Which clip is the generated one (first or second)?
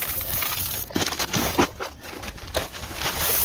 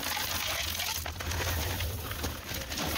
first